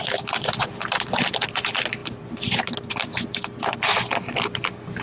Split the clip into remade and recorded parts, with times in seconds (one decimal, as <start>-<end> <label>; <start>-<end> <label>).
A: 0.0-5.0 recorded